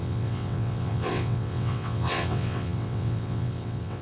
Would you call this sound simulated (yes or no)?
yes